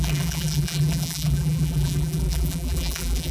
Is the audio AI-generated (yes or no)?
yes